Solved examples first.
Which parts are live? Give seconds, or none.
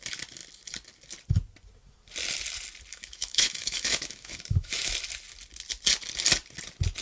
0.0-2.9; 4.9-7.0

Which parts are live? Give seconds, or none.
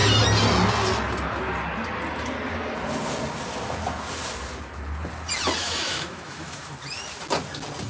0.0-5.6; 6.7-7.9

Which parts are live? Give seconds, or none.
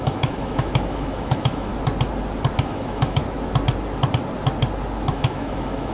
1.7-2.6; 3.2-5.1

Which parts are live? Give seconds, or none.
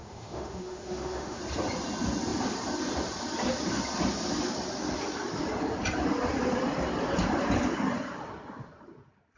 1.4-9.4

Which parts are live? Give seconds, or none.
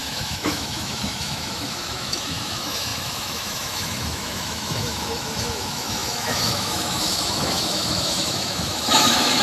none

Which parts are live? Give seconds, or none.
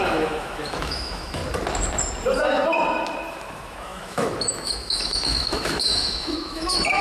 1.4-3.3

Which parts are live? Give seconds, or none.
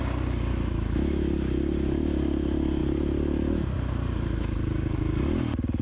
0.0-0.5; 1.2-5.8